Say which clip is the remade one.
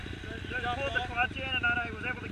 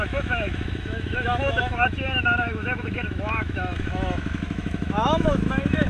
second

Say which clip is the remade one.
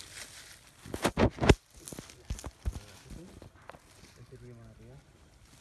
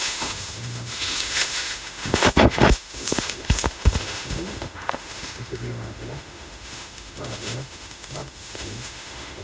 second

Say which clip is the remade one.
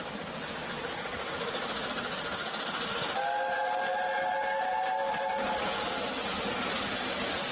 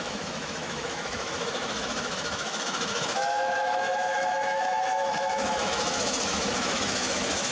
second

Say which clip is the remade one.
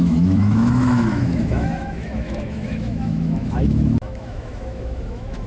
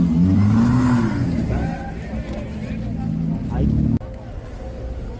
first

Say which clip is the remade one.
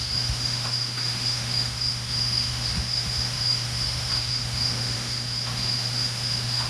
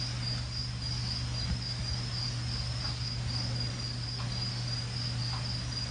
first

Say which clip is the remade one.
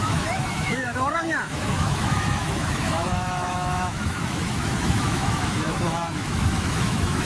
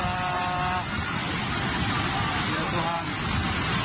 first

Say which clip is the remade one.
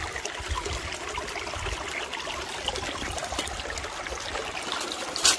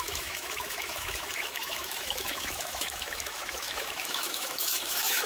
second